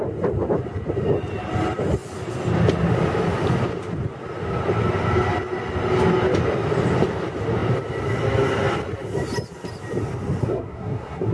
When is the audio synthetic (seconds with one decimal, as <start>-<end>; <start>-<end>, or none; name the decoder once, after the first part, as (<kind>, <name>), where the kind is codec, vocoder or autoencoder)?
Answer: 10.4-11.3 (codec, SNAC)